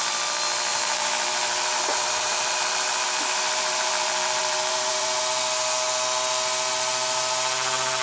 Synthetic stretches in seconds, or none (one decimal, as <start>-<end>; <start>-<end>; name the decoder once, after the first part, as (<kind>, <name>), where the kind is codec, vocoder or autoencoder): 0.7-5.2 (vocoder, BigVGAN v2)